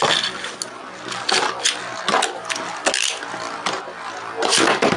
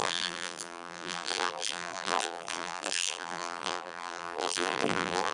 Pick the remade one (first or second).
second